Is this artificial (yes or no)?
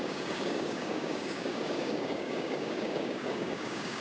yes